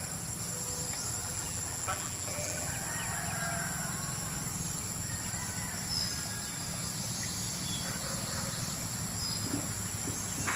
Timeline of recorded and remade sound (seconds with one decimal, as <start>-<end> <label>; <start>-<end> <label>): 0.0-1.2 recorded; 1.2-2.7 remade; 2.7-10.6 recorded